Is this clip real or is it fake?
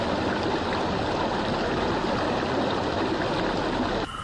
real